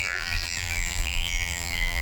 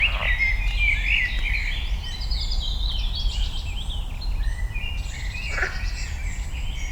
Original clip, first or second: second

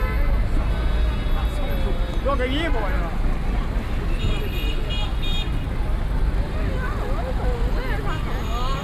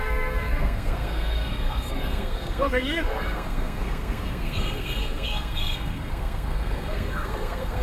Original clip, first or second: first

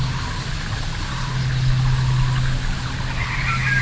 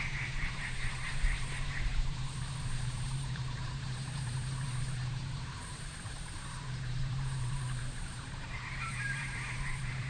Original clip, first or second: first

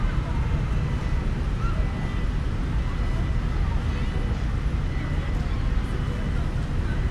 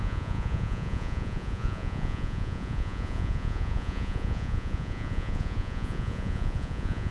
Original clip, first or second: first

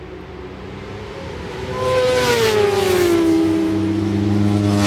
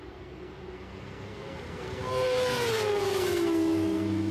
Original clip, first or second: first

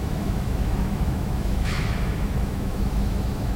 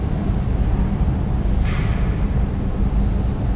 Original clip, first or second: second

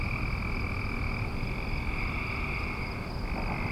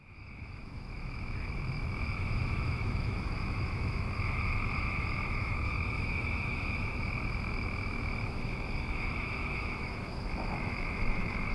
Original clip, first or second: first